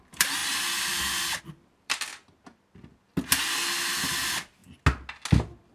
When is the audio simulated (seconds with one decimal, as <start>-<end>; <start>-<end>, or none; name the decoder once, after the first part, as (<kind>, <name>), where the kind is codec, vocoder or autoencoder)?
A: 0.0-0.4 (vocoder, BigVGAN v2); 1.4-2.1; 4.1-4.6